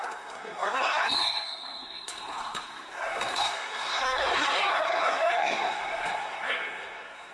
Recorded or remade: remade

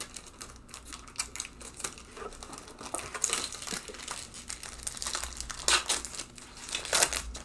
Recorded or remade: recorded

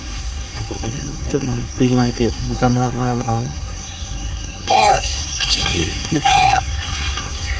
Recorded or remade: remade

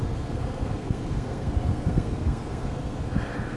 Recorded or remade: remade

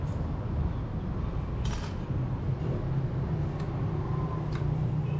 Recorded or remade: recorded